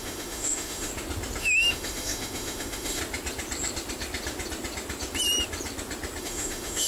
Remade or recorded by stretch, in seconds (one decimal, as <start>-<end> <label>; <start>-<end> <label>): 0.0-0.9 remade; 0.9-1.4 recorded; 1.4-3.0 remade; 3.0-6.2 recorded; 6.2-6.9 remade